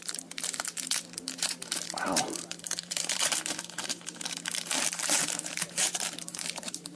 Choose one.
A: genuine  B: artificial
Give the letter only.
B